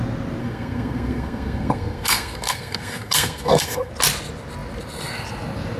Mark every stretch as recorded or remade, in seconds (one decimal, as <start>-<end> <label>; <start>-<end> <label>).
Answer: 0.0-0.4 recorded; 0.4-3.9 remade; 3.9-5.8 recorded